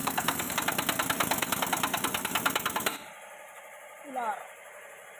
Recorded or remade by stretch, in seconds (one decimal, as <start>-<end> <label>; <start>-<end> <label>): 0.0-0.5 remade; 0.5-5.2 recorded